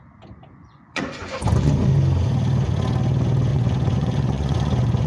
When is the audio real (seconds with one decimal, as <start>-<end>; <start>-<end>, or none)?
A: 0.0-0.6; 1.7-3.5